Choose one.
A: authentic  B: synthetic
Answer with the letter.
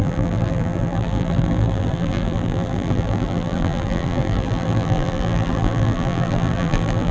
B